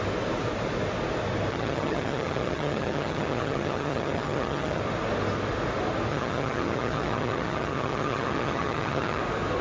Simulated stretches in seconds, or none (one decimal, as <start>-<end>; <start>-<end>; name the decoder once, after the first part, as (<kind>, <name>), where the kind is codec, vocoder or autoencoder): 1.5-4.8 (vocoder, HiFi-GAN); 6.1-9.2